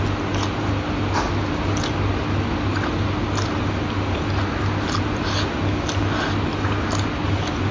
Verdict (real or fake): real